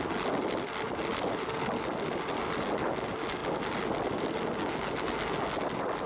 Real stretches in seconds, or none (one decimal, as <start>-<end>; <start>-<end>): 0.0-6.1